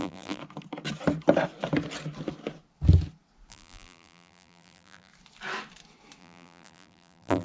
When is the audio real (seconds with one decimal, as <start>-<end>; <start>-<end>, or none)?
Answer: 0.4-3.5; 5.1-6.2